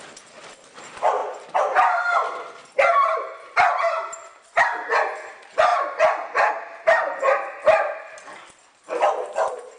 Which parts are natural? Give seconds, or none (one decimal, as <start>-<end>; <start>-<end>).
0.0-9.8